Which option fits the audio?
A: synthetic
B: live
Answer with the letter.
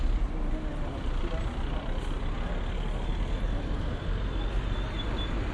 B